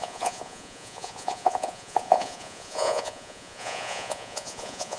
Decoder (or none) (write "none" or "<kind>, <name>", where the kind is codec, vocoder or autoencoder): vocoder, Vocos